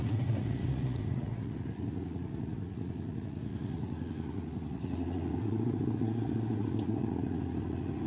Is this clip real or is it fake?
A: fake